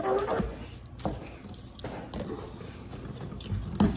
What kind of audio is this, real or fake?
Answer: real